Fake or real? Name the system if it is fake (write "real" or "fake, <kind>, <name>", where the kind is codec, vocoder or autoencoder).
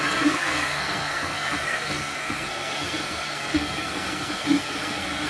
fake, codec, SNAC